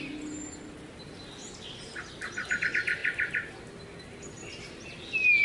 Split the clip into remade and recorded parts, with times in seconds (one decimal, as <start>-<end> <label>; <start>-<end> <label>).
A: 0.0-5.4 recorded